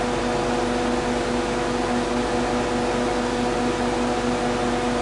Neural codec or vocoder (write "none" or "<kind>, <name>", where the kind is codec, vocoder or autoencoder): none